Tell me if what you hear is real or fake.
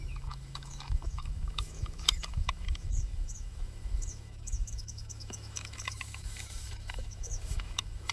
fake